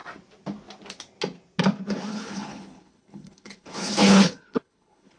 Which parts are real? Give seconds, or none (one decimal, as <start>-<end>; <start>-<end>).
0.0-2.1